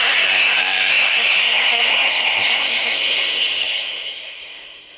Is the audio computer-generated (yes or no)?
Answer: yes